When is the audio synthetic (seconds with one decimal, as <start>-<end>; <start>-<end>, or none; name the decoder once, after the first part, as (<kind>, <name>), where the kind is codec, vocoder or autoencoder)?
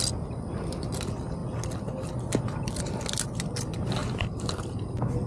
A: none